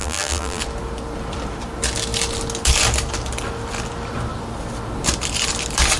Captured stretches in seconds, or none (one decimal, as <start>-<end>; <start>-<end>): 0.6-6.0